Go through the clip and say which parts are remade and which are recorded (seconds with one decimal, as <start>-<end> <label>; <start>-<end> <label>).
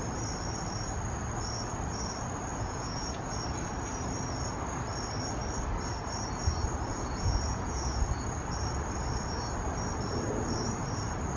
0.0-2.5 recorded; 2.5-3.3 remade; 3.3-6.9 recorded; 6.9-8.0 remade; 8.0-11.4 recorded